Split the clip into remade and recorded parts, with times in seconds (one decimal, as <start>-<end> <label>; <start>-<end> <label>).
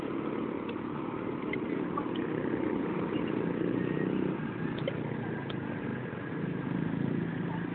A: 0.0-7.7 recorded